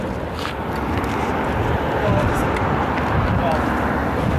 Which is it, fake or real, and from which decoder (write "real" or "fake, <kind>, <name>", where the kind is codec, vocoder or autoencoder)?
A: real